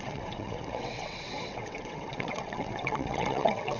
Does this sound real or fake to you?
fake